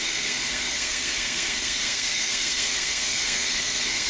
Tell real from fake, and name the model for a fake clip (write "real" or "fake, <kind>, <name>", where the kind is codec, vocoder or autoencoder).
fake, codec, SNAC